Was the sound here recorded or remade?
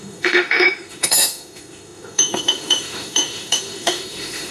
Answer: remade